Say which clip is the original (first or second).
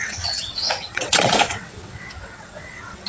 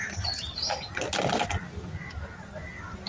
second